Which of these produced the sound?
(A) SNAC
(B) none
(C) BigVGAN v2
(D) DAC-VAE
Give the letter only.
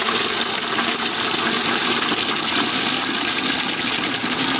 B